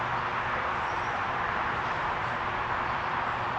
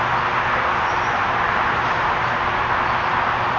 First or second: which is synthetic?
first